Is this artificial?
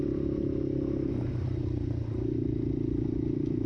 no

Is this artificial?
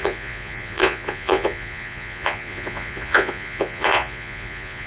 yes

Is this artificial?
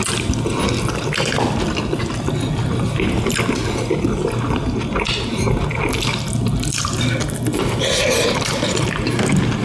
no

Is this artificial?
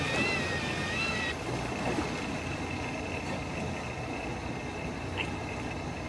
no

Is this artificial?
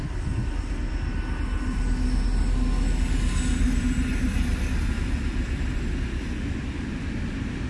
no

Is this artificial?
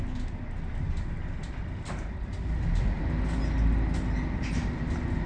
no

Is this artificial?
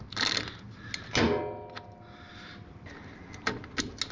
no